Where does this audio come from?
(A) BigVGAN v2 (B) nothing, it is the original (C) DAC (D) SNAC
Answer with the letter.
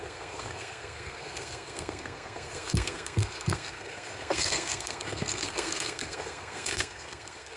D